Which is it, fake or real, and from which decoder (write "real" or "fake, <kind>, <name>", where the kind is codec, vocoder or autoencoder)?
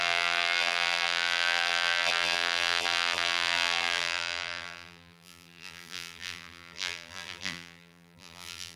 fake, vocoder, BigVGAN v2